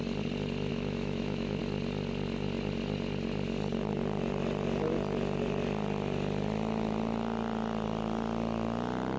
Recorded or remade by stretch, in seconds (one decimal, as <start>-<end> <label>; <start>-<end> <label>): 0.0-0.7 recorded; 0.7-1.6 remade; 1.6-9.2 recorded